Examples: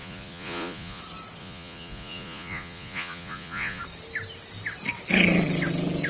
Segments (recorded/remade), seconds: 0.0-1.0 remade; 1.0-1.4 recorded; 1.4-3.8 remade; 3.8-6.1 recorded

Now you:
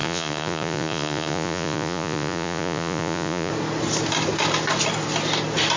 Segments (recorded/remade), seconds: 0.0-3.5 remade; 3.5-5.8 recorded

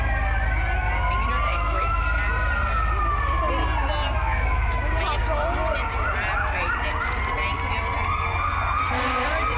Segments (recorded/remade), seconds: 0.0-1.5 recorded; 1.5-2.0 remade; 2.0-4.2 recorded; 4.2-4.9 remade; 4.9-9.6 recorded

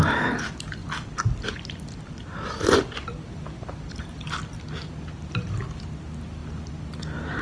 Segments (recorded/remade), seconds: 0.0-0.8 recorded; 0.8-4.6 remade; 4.6-7.4 recorded

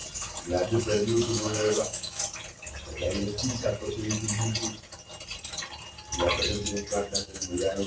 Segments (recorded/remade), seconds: 0.0-0.8 recorded; 0.8-2.2 remade; 2.2-6.9 recorded; 6.9-7.9 remade

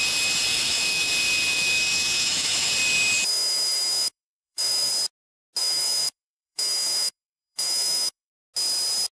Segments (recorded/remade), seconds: 0.0-0.5 recorded; 0.5-1.1 remade; 1.1-1.5 recorded; 1.5-2.7 remade; 2.7-3.3 recorded; 3.3-4.9 remade; 4.9-5.6 recorded; 5.6-8.3 remade; 8.3-9.1 recorded